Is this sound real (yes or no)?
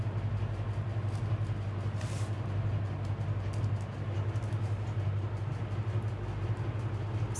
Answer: yes